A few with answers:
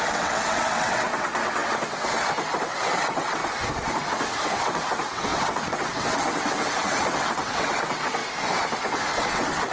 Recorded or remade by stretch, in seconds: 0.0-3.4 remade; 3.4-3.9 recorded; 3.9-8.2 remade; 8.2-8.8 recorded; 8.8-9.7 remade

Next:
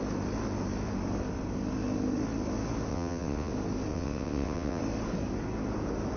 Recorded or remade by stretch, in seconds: 0.0-2.9 recorded; 2.9-3.5 remade; 3.5-3.9 recorded; 3.9-4.8 remade; 4.8-6.2 recorded